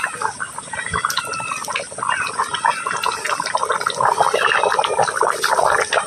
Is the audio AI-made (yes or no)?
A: no